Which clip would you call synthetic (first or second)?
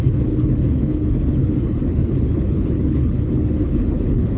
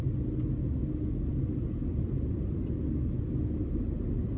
first